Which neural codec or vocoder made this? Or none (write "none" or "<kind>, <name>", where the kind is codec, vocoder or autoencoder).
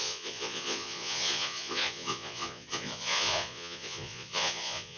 vocoder, Vocos